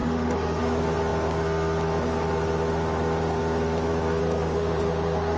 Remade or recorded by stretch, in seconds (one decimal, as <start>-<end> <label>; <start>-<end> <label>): 0.0-0.6 remade; 0.6-4.2 recorded; 4.2-5.4 remade